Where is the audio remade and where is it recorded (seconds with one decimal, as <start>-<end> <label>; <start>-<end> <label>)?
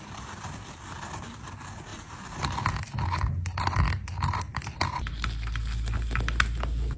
0.0-7.0 recorded